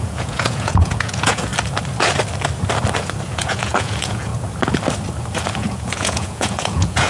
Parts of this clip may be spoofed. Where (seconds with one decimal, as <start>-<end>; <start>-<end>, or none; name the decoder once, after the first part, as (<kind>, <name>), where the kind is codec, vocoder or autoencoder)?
0.0-1.5 (vocoder, Vocos); 3.3-4.3; 5.5-7.1